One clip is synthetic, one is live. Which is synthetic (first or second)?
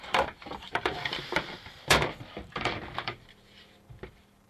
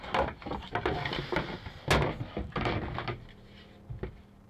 first